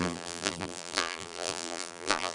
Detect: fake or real fake